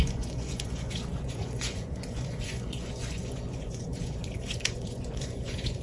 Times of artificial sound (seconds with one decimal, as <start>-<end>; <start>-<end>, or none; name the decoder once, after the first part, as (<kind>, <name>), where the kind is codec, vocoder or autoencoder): 0.0-5.8 (vocoder, Vocos)

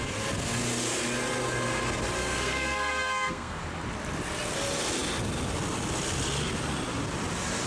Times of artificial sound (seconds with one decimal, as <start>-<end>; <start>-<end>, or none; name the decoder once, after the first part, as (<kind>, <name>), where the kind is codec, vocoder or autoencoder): 2.2-3.6 (codec, SNAC)